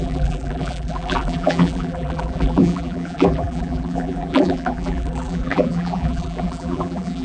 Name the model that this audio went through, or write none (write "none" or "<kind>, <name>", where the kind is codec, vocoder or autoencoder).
vocoder, BigVGAN v2